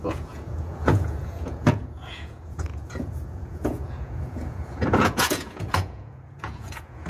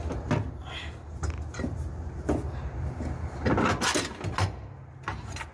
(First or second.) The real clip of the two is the second